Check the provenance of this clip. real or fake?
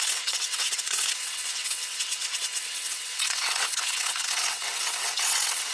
fake